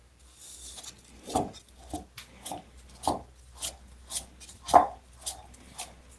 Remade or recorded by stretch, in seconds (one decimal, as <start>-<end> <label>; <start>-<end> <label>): 0.0-6.2 recorded